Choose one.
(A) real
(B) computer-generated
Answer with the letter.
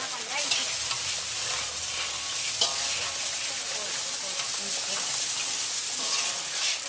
A